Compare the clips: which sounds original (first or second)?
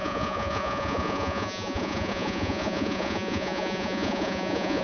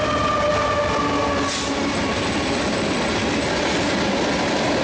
second